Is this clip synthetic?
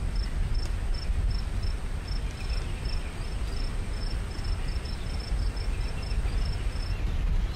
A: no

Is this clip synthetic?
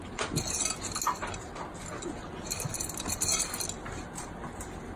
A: no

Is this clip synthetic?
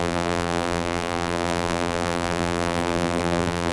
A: yes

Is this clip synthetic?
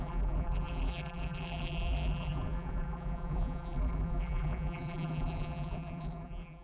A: yes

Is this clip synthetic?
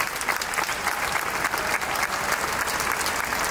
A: no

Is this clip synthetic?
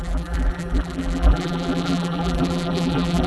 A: yes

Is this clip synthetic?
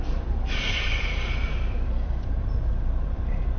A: yes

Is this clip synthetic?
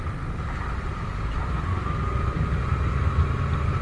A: no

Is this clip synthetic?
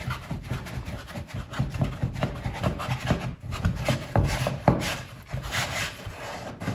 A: yes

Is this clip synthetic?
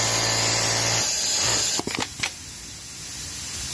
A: no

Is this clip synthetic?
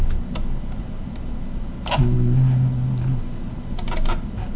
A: no